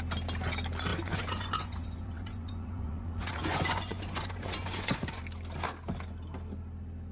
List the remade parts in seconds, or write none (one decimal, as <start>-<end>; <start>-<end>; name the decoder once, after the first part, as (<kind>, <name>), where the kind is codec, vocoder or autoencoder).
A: 0.9-5.2 (vocoder, Vocos)